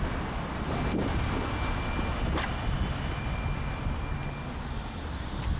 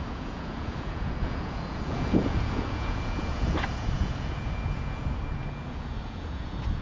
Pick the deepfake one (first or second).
second